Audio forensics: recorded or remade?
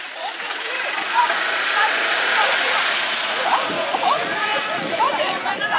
remade